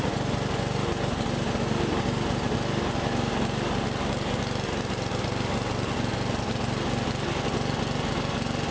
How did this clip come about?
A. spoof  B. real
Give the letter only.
B